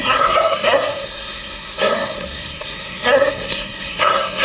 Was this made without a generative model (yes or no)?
no